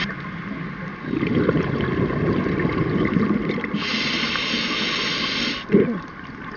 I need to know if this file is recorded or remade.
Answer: recorded